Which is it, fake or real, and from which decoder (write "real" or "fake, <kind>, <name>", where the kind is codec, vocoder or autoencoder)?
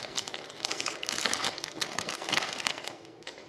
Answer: fake, codec, SNAC